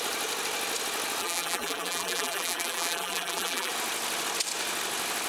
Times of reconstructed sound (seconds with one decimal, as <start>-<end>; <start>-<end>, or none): 1.2-3.7

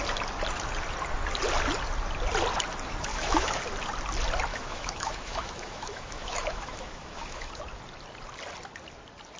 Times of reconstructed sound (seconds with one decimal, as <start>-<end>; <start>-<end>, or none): 3.1-3.6; 4.5-7.6

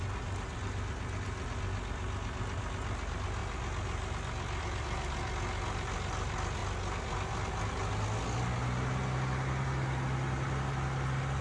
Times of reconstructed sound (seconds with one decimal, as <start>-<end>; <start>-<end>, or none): none